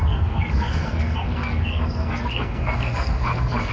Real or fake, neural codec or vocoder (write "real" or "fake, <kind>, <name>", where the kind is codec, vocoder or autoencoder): fake, codec, SNAC